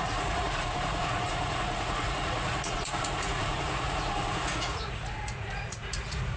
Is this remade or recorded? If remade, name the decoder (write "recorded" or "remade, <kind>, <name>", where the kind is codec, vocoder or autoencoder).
remade, vocoder, Vocos